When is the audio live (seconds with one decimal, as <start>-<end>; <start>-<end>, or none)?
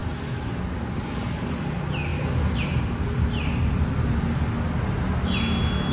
0.0-5.9